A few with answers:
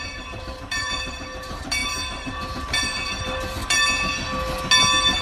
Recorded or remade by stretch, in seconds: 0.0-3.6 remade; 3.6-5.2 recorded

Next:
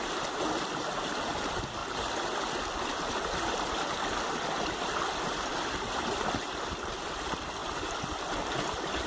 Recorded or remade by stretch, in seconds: 0.0-1.8 remade; 1.8-4.2 recorded; 4.2-5.5 remade; 5.5-6.0 recorded; 6.0-9.1 remade

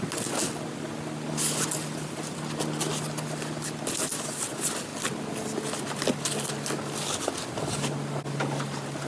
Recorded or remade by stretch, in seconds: 0.0-9.1 recorded

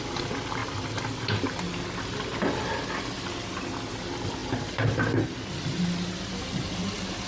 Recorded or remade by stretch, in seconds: 0.0-7.3 recorded